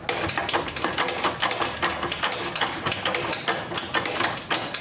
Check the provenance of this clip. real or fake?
real